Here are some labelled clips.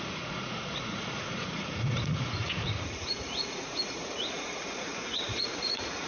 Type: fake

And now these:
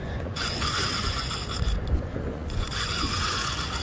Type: fake